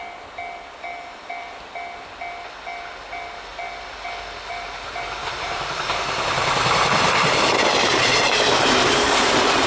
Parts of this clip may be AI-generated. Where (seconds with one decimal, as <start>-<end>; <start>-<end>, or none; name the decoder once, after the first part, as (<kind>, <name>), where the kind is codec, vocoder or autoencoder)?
5.2-9.7 (vocoder, BigVGAN v2)